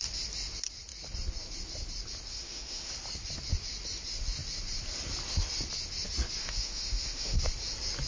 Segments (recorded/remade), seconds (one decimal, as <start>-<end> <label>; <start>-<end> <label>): 0.0-2.3 recorded; 2.3-2.9 remade; 2.9-6.4 recorded; 6.4-7.4 remade; 7.4-8.1 recorded